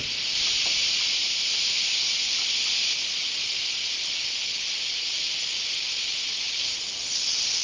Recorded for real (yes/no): yes